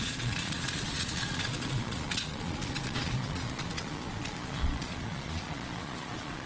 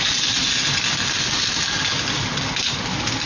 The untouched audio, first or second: second